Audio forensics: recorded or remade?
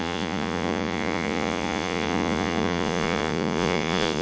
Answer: remade